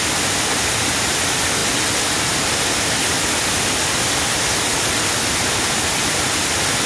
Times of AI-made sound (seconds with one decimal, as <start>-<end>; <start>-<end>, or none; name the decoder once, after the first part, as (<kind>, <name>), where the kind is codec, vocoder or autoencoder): none

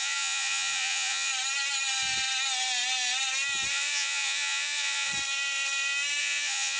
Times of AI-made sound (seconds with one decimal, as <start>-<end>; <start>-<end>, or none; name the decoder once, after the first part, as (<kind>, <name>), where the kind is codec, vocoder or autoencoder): 0.0-1.3 (vocoder, Vocos); 3.7-5.1; 6.2-6.8